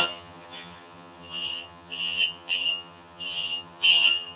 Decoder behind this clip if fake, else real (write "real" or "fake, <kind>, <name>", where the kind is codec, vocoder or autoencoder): fake, vocoder, HiFi-GAN